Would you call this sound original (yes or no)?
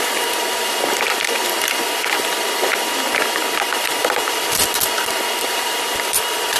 no